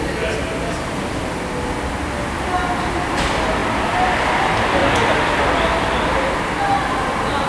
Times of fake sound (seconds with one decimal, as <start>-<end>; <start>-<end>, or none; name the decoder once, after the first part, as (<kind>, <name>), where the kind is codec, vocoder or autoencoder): none